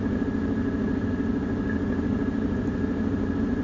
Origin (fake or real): real